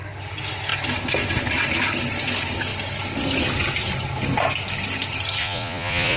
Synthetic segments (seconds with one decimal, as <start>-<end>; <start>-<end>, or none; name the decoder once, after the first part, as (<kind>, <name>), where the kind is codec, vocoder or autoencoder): 5.4-6.2 (vocoder, Vocos)